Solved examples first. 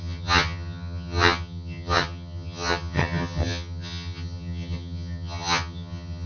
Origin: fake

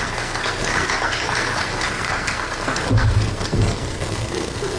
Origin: fake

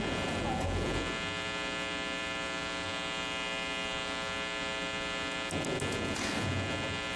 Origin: real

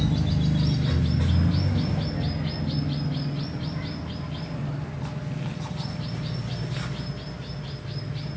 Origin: real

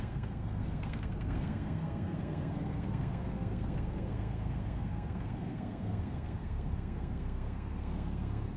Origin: fake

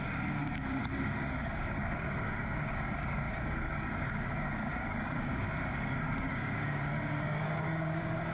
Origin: fake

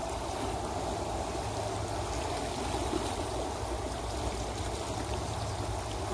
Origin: real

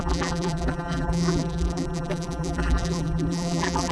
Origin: fake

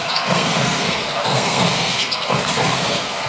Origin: fake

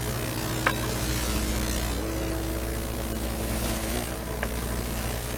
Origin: real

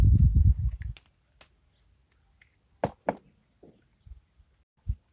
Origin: real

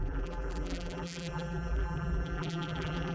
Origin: fake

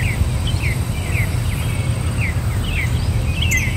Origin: real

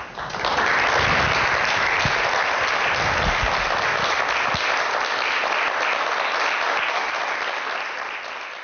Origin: real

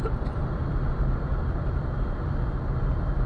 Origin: fake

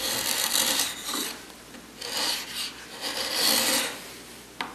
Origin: real